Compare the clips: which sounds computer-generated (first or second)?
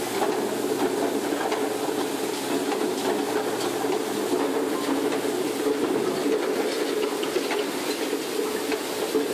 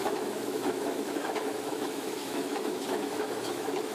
second